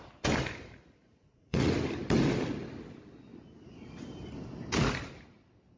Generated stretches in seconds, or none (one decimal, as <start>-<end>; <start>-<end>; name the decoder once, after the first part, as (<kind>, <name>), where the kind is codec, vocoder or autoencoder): 1.0-1.7 (vocoder, Vocos)